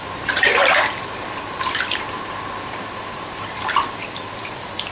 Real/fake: fake